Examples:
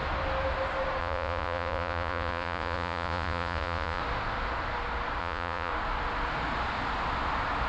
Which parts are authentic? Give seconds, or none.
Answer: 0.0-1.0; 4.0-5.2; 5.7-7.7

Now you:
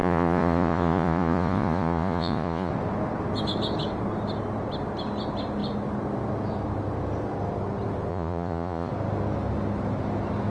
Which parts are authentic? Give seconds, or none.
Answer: 2.7-8.1; 8.9-10.5

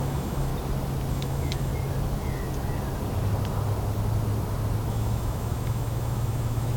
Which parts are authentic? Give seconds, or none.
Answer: 0.5-1.1; 1.7-4.9

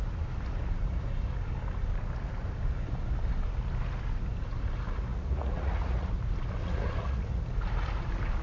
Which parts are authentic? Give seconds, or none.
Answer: 0.0-5.1; 6.1-6.6; 7.4-8.4